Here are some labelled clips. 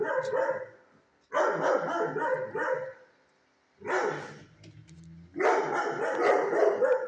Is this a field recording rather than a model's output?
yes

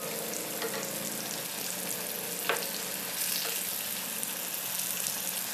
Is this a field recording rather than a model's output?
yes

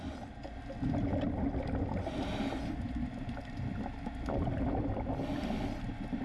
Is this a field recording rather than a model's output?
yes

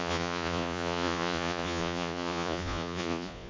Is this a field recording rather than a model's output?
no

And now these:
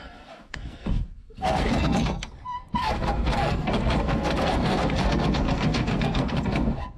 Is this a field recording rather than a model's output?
no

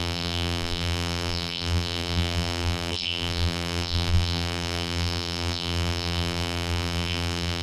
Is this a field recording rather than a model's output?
no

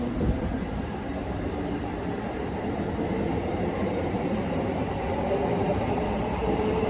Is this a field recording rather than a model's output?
no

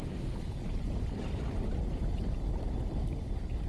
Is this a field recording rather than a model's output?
yes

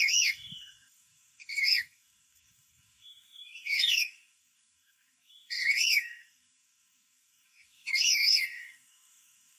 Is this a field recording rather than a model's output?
no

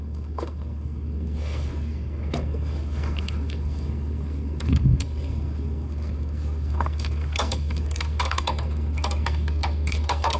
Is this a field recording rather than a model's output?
no